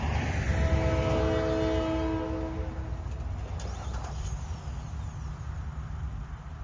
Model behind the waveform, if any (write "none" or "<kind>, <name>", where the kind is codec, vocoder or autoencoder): none